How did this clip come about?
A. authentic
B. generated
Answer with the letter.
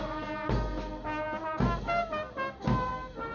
A